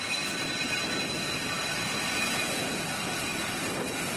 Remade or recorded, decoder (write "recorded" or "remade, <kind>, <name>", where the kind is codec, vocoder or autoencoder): remade, vocoder, BigVGAN v2